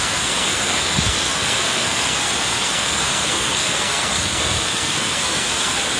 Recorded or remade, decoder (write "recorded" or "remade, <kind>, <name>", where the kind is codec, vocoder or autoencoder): remade, codec, SNAC